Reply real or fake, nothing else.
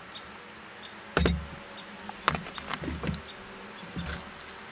real